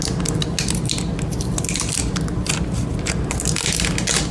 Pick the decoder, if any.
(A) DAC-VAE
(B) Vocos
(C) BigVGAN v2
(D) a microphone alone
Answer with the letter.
D